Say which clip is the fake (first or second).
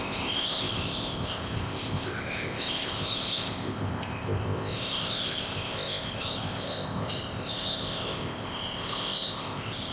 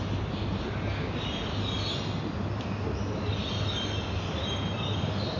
first